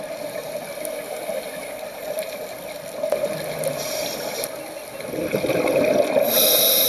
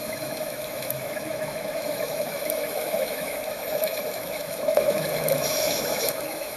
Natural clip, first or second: first